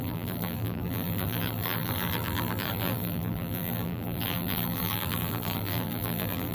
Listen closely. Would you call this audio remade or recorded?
remade